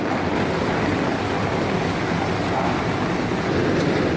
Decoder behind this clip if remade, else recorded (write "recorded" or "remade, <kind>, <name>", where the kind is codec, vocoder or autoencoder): recorded